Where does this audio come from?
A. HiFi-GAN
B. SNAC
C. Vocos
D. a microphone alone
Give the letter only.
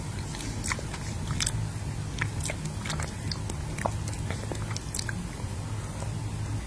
D